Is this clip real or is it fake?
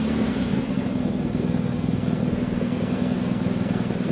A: fake